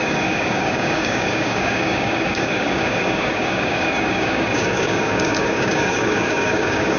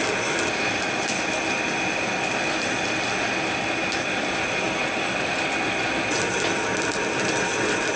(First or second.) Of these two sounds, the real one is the second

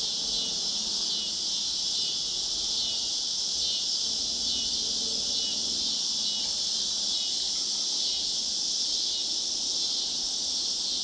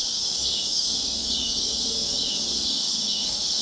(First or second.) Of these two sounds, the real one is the first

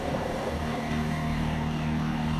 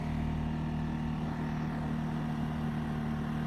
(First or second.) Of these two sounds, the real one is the second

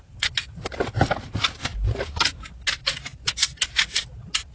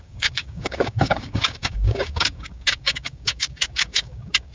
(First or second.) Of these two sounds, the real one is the first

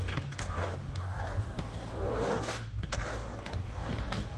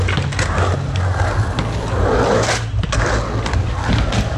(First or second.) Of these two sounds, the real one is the second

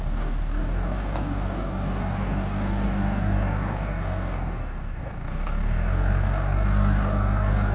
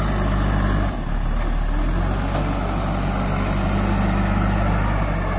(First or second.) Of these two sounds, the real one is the second